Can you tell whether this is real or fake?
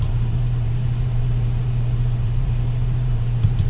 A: fake